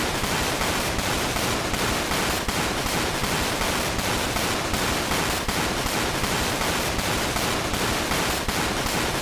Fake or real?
fake